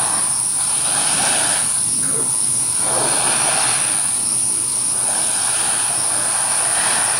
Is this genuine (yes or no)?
yes